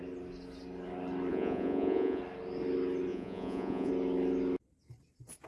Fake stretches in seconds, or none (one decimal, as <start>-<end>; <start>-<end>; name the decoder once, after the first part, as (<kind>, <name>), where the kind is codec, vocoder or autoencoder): 1.3-2.2 (vocoder, Vocos); 3.1-3.9